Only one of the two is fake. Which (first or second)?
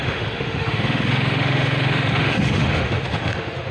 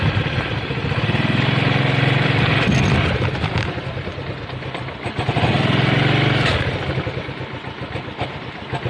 first